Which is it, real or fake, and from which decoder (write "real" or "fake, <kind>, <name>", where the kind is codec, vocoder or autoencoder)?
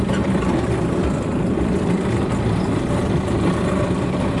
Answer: fake, vocoder, BigVGAN v2